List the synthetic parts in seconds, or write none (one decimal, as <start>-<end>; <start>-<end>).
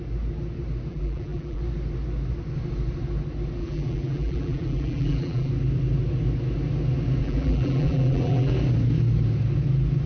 0.9-1.6; 3.6-5.5; 7.2-8.5